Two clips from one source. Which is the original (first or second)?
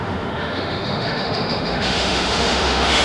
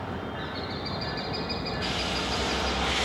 second